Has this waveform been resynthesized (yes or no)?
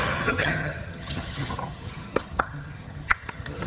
yes